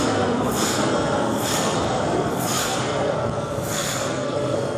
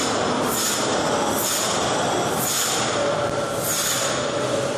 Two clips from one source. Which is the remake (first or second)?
first